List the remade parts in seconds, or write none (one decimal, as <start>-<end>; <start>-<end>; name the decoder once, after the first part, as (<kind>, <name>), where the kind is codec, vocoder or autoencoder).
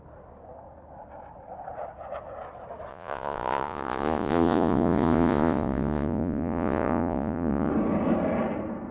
2.9-7.7 (vocoder, Vocos)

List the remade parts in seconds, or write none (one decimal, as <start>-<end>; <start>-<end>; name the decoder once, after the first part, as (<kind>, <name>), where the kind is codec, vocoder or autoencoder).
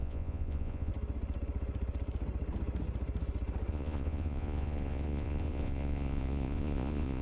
0.0-0.9 (vocoder, Vocos); 3.7-7.2